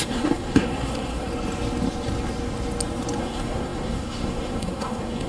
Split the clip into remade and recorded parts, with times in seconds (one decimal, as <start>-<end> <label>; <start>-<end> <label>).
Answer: 0.0-1.3 remade; 1.3-3.2 recorded; 3.2-5.3 remade